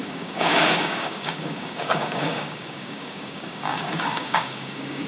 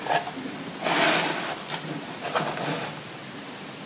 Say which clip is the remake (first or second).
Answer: first